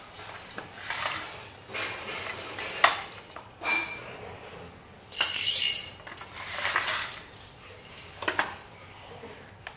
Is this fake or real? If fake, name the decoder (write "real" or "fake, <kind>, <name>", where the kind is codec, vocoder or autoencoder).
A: real